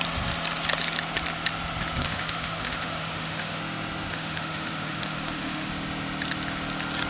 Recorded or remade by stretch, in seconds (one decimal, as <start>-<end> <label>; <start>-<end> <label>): 0.0-2.0 recorded; 2.0-3.6 remade; 3.6-4.1 recorded; 4.1-5.7 remade; 5.7-7.1 recorded